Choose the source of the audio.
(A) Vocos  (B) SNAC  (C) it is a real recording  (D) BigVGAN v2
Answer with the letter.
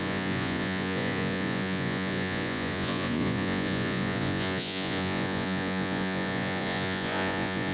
A